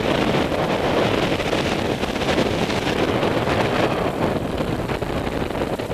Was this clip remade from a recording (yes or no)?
no